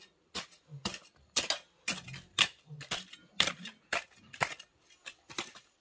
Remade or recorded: recorded